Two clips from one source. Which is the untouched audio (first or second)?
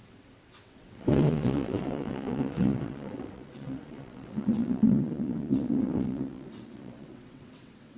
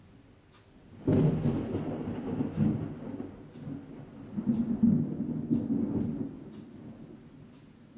second